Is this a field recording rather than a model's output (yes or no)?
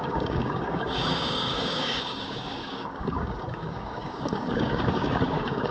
no